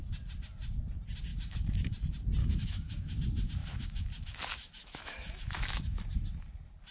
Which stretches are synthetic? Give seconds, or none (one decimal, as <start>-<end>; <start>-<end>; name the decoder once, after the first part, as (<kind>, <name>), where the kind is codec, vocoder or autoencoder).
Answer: 1.3-1.9 (autoencoder, DAC-VAE); 2.4-3.2; 3.6-6.0